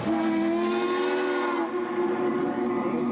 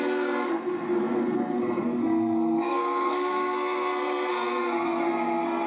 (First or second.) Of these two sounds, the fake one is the second